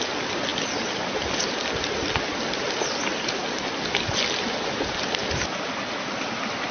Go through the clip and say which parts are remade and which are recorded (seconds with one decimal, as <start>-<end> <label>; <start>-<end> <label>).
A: 0.0-6.7 recorded